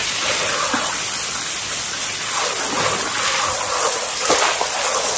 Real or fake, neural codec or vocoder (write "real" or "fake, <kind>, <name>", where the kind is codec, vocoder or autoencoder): real